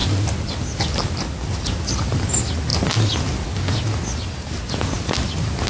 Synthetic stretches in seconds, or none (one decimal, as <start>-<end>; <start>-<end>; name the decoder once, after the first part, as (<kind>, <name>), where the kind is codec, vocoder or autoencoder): none